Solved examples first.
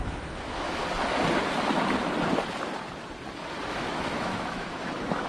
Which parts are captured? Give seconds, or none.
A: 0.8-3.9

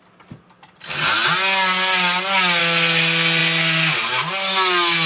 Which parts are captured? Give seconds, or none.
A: 0.0-5.1

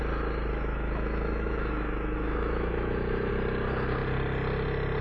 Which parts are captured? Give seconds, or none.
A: 0.0-0.5; 3.3-5.0

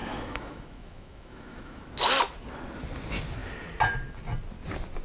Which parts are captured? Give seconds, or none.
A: 1.8-5.0

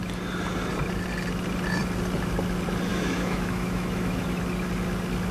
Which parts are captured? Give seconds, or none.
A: 0.0-2.9; 4.4-5.3

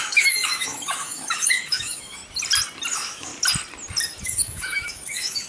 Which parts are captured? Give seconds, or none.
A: 2.2-2.9; 3.3-4.2